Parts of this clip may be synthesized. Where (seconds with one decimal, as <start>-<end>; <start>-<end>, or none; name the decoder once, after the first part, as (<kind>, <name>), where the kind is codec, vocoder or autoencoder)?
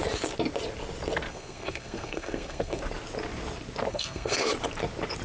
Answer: 1.3-2.8 (codec, SNAC); 3.9-4.5